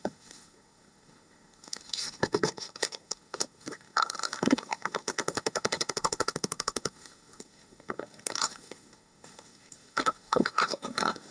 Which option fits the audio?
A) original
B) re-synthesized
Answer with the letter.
B